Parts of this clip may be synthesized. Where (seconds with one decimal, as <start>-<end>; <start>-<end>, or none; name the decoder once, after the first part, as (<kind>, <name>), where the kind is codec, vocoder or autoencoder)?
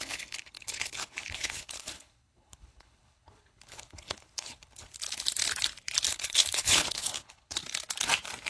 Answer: 0.0-4.9 (codec, HILCodec); 6.1-7.6